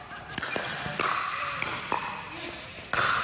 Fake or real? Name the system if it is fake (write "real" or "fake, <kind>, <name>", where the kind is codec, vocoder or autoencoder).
real